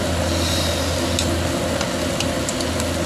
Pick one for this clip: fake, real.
real